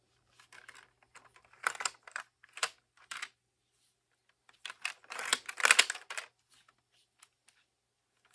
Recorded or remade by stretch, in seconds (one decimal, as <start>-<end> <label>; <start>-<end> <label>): 0.0-8.3 recorded